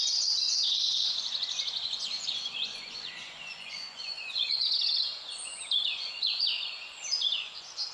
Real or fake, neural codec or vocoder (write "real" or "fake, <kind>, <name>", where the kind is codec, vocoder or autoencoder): fake, vocoder, Vocos